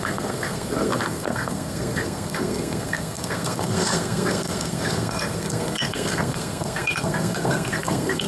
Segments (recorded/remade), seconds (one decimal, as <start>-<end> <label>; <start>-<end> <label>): 0.0-8.3 remade